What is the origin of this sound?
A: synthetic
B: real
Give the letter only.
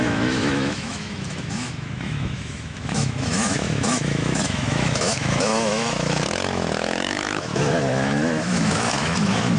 A